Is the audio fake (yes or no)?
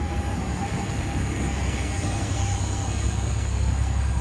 yes